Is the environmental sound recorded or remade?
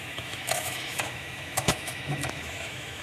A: remade